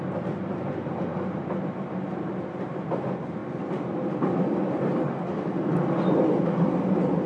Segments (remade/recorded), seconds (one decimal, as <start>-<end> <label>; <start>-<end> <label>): 0.0-7.3 recorded